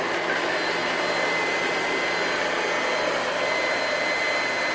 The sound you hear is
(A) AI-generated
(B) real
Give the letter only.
B